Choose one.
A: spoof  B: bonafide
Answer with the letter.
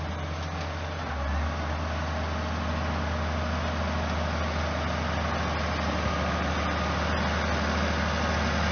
B